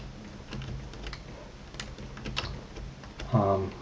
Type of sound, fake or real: real